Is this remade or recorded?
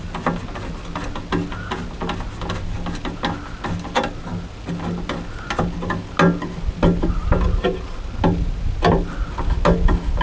recorded